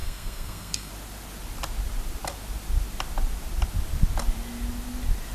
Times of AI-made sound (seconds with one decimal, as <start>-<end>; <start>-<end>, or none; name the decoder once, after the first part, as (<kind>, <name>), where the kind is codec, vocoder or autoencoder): 0.0-0.9 (codec, SNAC)